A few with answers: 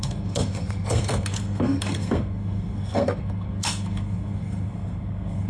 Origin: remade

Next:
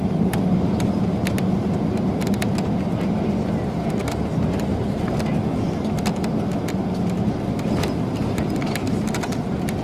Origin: recorded